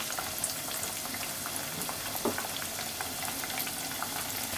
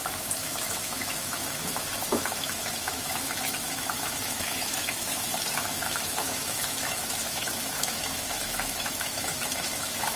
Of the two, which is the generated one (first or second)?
second